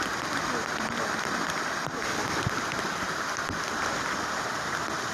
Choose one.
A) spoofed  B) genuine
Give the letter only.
B